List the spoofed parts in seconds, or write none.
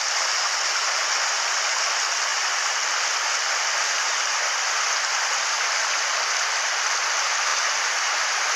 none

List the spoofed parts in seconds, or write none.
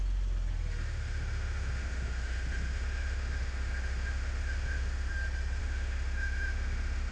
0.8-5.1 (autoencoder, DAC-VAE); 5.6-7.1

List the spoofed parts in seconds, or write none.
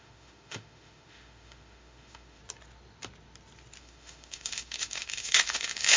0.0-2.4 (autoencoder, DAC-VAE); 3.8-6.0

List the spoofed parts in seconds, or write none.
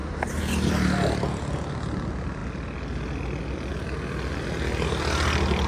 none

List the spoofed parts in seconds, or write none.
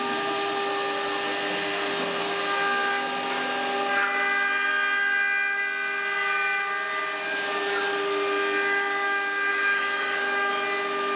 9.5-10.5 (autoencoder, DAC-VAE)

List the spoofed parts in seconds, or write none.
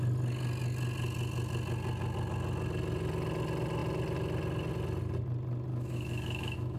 5.7-6.8 (autoencoder, DAC-VAE)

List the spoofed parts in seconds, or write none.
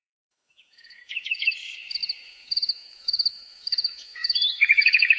0.0-5.2 (autoencoder, DAC-VAE)